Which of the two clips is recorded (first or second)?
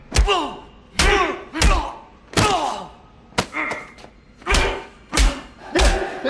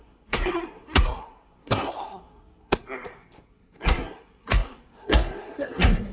first